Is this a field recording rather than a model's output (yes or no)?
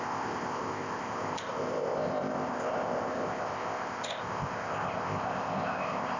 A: no